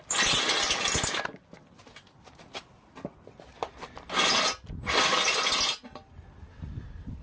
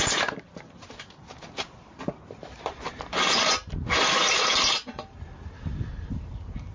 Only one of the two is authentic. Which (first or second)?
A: first